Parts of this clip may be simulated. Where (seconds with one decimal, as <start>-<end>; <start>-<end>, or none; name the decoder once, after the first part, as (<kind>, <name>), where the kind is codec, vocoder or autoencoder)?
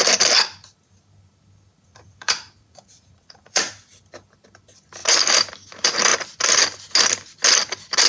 1.7-3.7 (vocoder, Vocos)